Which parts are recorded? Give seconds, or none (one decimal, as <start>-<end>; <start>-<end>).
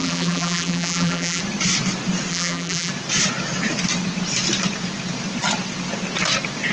1.4-2.3; 2.9-6.7